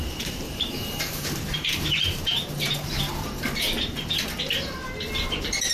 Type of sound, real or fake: fake